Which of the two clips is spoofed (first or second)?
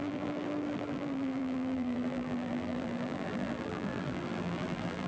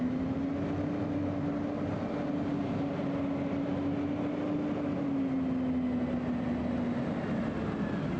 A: first